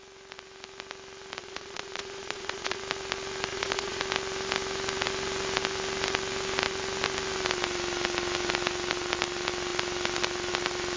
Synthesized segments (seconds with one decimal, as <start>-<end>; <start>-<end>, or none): 1.4-2.8; 3.5-4.0